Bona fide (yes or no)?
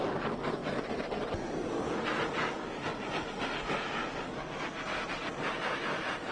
yes